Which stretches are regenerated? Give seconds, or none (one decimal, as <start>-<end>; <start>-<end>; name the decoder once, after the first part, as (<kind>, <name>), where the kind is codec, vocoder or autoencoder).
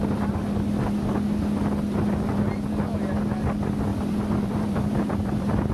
3.9-5.7 (vocoder, BigVGAN v2)